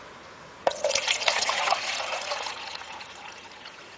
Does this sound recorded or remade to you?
remade